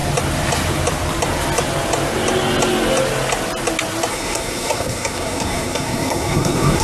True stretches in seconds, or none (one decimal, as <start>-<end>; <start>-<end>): 0.0-4.1